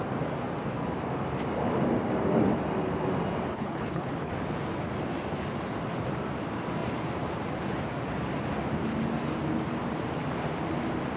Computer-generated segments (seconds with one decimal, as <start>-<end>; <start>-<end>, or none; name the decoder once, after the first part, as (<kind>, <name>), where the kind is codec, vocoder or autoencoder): 3.5-4.3 (codec, HILCodec)